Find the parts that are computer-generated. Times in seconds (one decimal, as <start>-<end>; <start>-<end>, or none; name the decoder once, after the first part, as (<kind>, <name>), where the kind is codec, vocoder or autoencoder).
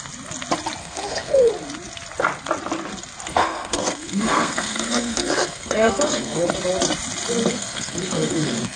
0.8-1.5 (codec, SNAC); 3.3-6.5; 7.5-8.8